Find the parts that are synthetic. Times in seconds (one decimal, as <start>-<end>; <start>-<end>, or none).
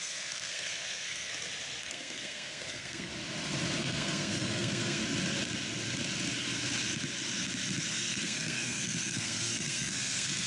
0.0-1.3; 1.8-3.1; 3.8-5.0; 7.9-10.5